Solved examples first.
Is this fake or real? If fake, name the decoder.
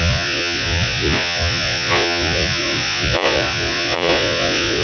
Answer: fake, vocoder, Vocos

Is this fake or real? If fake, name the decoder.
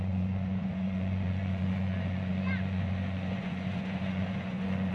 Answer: fake, vocoder, Vocos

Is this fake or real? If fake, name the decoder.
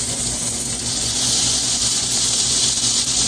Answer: fake, vocoder, Vocos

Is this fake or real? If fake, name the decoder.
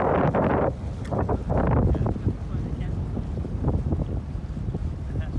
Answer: real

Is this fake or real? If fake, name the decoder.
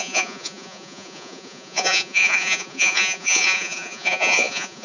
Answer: fake, vocoder, Vocos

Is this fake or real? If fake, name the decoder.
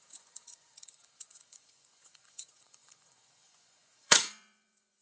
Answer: fake, vocoder, Vocos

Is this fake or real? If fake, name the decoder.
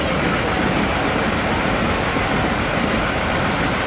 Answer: real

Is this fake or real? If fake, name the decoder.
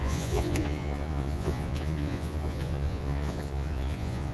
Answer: fake, vocoder, Vocos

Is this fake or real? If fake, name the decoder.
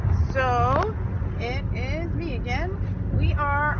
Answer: real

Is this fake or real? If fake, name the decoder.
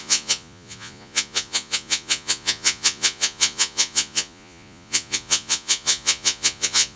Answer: fake, vocoder, Vocos